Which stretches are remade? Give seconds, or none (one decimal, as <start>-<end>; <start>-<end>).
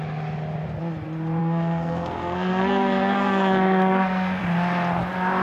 1.4-4.4